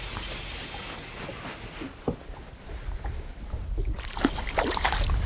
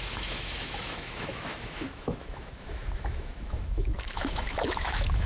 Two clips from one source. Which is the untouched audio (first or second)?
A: first